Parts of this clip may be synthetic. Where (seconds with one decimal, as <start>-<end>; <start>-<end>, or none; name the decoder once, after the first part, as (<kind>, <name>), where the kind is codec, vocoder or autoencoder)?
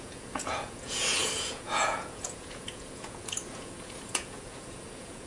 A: 0.0-5.3 (vocoder, Vocos)